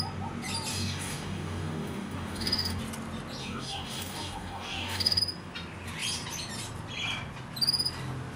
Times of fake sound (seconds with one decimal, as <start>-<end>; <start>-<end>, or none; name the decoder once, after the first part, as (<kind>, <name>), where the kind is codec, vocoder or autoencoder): 0.7-2.8 (codec, DAC); 3.4-5.2